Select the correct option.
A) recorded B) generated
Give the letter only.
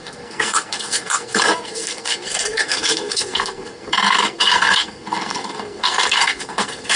B